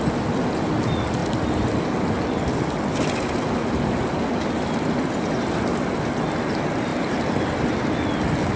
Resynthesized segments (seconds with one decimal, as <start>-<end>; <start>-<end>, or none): none